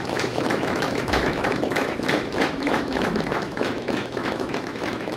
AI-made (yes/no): yes